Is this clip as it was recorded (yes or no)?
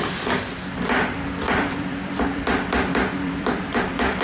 no